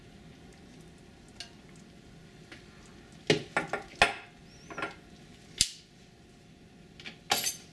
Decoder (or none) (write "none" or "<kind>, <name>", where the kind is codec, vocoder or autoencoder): none